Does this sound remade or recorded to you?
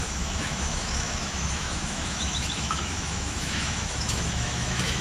remade